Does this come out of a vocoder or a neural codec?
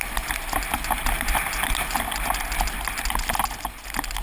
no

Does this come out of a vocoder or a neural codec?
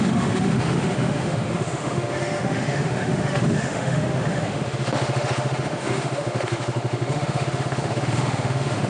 yes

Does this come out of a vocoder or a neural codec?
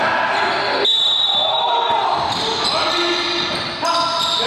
no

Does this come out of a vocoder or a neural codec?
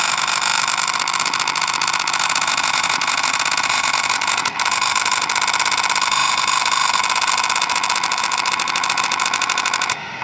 yes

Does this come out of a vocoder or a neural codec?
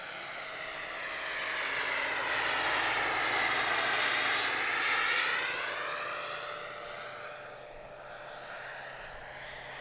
no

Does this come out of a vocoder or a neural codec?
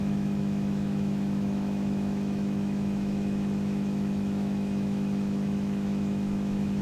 yes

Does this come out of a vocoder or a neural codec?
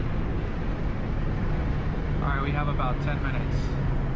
no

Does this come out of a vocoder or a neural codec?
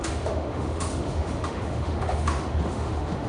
yes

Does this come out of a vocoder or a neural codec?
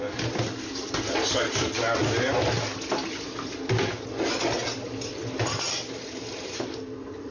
no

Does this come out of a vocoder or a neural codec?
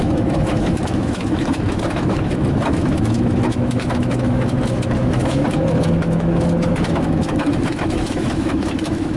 yes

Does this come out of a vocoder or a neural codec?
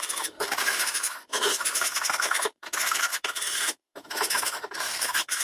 yes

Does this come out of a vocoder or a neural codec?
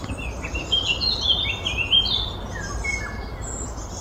no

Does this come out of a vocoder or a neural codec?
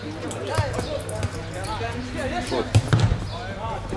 no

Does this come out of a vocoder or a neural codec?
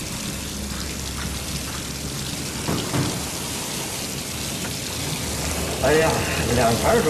no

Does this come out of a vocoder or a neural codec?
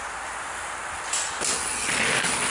no